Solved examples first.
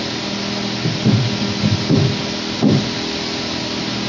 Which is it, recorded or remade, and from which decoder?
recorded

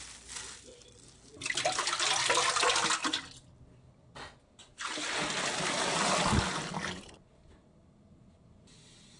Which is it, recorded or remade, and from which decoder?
recorded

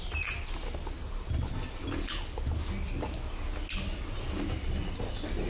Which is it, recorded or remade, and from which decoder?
recorded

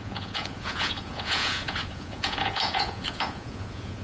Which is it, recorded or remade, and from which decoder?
remade, vocoder, Vocos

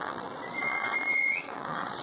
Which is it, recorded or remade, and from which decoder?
remade, vocoder, Vocos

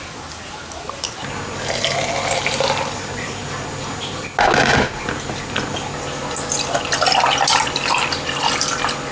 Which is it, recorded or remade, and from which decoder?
recorded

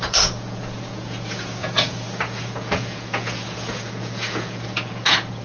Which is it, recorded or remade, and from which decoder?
remade, vocoder, Vocos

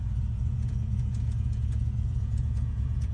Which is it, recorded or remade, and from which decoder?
remade, vocoder, Vocos